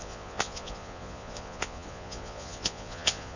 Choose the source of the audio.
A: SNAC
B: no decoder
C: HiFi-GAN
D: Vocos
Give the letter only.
D